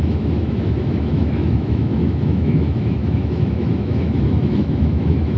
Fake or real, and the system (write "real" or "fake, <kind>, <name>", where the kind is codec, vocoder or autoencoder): fake, autoencoder, DAC-VAE